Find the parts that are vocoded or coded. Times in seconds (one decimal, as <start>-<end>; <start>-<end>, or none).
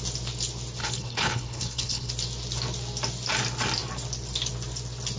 0.8-2.1